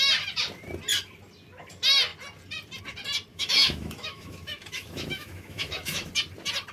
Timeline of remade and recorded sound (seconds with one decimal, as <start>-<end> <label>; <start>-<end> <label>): 0.0-3.3 recorded; 3.3-6.1 remade; 6.1-6.7 recorded